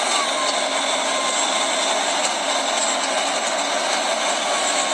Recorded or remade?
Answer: recorded